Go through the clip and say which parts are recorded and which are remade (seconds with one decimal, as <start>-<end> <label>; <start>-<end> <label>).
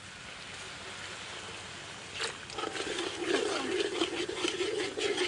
0.0-4.1 recorded; 4.1-5.3 remade